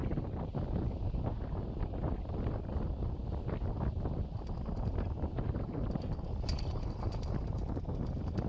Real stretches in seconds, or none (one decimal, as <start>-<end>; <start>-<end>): 0.0-8.5

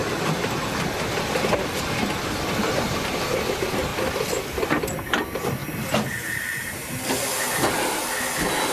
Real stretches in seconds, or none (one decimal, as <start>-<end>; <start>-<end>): 0.6-2.6; 3.3-3.9; 4.6-5.6; 6.9-8.7

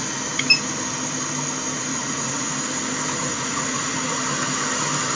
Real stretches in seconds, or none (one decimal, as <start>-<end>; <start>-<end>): 0.0-1.9; 2.5-3.3; 4.2-5.1

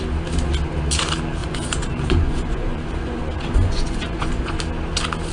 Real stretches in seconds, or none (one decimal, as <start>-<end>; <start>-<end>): 0.0-1.4; 4.6-5.3

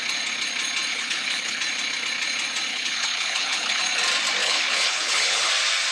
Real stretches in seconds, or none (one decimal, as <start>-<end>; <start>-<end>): 0.0-0.9; 1.6-2.7; 3.8-4.4; 5.5-5.9

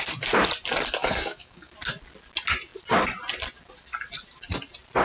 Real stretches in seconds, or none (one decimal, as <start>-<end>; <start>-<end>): 0.0-1.0; 1.7-5.0

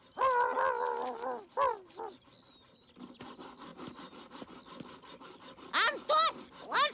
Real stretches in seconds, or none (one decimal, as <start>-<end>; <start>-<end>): 0.0-3.7; 4.4-6.9

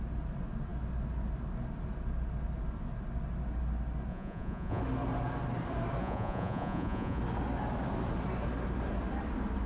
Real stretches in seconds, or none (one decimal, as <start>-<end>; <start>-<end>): 0.0-4.1; 4.8-6.0; 7.2-9.7